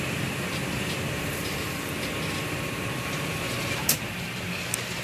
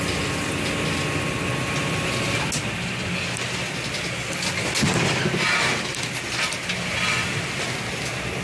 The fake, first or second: first